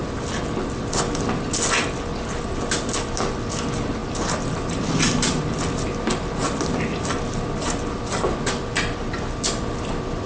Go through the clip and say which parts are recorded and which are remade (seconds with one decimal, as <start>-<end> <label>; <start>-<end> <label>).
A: 0.0-10.3 recorded

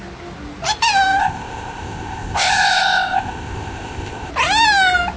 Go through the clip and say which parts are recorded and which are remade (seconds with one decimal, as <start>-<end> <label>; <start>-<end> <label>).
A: 0.0-1.2 recorded; 1.2-4.3 remade; 4.3-5.2 recorded

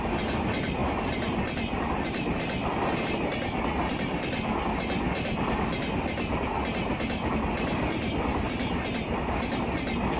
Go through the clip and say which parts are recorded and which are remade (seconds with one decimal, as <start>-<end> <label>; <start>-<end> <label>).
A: 0.0-10.2 recorded

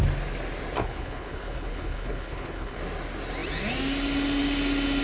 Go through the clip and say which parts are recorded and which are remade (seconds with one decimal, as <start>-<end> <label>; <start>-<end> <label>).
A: 0.0-0.8 recorded; 0.8-2.8 remade; 2.8-5.0 recorded

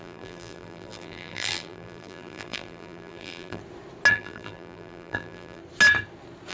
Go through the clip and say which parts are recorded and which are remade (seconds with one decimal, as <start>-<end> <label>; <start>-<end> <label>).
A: 0.0-3.6 remade; 3.6-4.1 recorded; 4.1-5.6 remade; 5.6-6.5 recorded

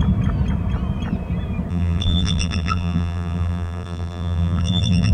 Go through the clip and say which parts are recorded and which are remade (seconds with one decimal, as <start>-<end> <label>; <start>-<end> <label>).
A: 0.0-1.7 recorded; 1.7-5.1 remade

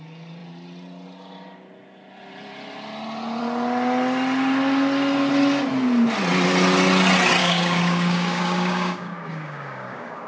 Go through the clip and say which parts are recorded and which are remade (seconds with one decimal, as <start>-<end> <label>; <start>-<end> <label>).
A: 0.0-7.4 recorded; 7.4-10.3 remade